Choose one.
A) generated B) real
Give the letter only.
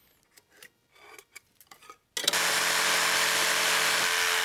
B